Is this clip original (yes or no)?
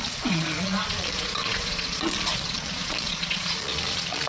no